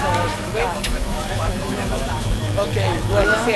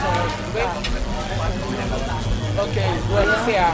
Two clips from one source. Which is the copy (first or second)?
first